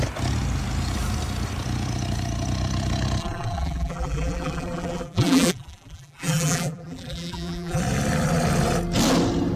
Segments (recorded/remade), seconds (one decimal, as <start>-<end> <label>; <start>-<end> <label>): 0.0-3.2 recorded; 3.2-7.8 remade; 7.8-9.6 recorded